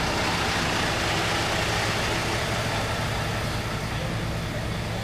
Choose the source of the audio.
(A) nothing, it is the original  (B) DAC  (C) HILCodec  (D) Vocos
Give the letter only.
A